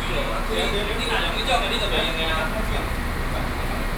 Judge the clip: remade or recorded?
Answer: recorded